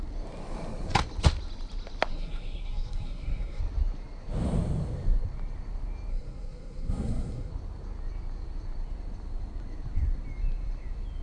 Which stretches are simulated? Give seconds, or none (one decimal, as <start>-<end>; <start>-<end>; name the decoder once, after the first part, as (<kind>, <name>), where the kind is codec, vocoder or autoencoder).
2.1-3.6 (codec, SNAC); 6.1-7.5